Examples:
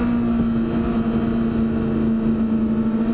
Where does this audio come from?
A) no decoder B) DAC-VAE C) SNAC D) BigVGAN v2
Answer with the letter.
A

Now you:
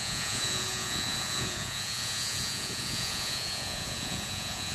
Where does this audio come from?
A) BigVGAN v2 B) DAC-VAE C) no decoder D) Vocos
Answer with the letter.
D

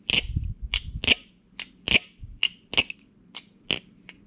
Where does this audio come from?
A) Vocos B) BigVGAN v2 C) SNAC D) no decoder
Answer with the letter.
D